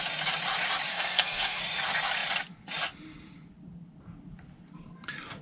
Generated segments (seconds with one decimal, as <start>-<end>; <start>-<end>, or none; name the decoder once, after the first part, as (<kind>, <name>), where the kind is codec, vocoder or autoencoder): 0.9-1.6 (codec, SNAC)